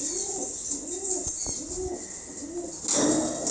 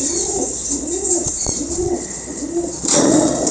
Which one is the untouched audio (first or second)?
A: first